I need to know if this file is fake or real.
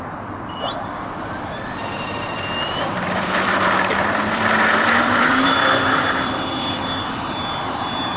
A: fake